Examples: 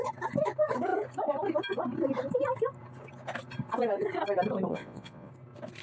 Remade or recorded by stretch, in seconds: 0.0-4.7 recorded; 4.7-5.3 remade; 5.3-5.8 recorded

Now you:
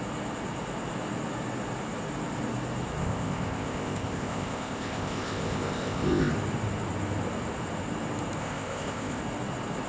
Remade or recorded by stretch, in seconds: 0.0-3.0 recorded; 3.0-6.3 remade; 6.3-8.4 recorded; 8.4-9.2 remade; 9.2-9.9 recorded

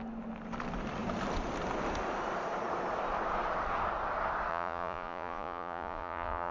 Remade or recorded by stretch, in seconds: 0.0-4.5 recorded; 4.5-6.5 remade

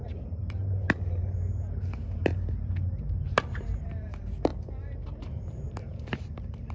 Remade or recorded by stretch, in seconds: 0.0-4.5 remade; 4.5-5.2 recorded; 5.2-6.7 remade

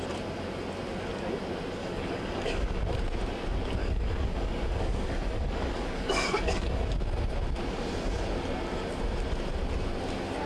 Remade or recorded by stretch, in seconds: 0.0-1.8 recorded; 1.8-2.8 remade; 2.8-3.8 recorded; 3.8-6.8 remade; 6.8-10.5 recorded

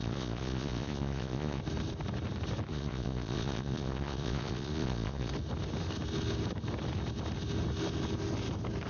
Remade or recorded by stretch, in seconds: 0.0-1.6 remade; 1.6-2.7 recorded; 2.7-5.3 remade; 5.3-8.9 recorded

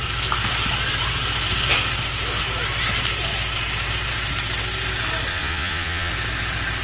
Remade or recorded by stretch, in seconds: 0.0-5.3 recorded; 5.3-6.1 remade; 6.1-6.8 recorded

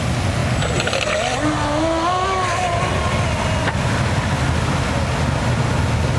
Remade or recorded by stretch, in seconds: 0.0-6.2 recorded